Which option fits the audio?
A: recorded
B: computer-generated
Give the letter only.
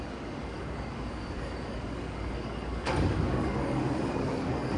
B